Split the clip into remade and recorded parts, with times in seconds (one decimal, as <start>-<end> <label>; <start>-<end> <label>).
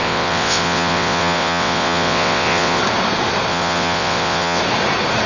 0.0-2.8 remade; 2.8-3.5 recorded; 3.5-4.6 remade; 4.6-5.3 recorded